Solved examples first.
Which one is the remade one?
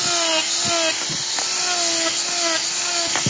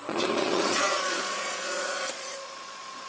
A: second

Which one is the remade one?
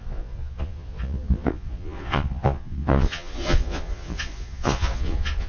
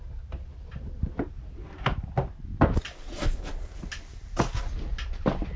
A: first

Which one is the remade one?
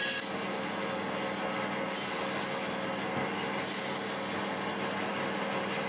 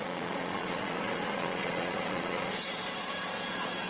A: second